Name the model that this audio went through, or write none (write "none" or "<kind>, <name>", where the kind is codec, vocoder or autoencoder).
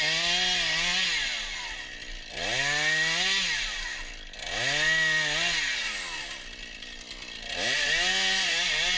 none